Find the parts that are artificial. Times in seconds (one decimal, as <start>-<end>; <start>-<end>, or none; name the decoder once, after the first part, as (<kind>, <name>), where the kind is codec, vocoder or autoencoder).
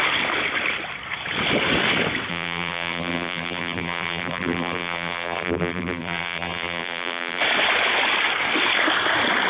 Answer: 2.3-7.4 (vocoder, BigVGAN v2)